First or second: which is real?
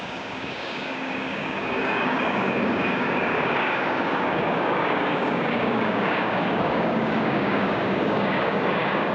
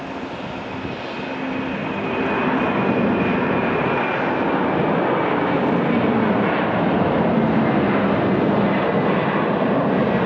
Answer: second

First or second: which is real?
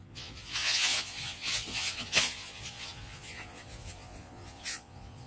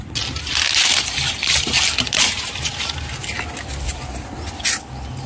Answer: second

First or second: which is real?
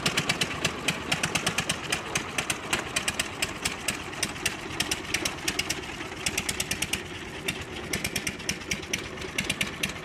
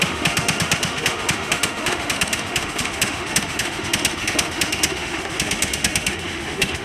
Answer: first